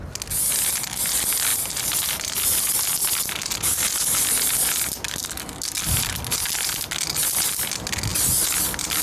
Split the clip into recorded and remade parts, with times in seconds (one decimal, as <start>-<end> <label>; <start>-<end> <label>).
0.0-9.0 recorded